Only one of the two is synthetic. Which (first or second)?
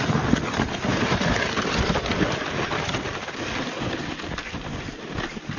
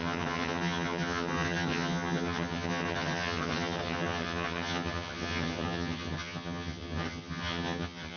second